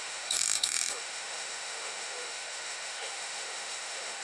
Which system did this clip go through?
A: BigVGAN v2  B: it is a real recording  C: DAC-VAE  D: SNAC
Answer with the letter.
C